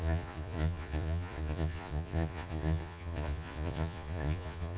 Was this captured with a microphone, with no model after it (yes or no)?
no